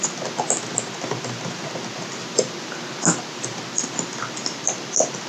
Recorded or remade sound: recorded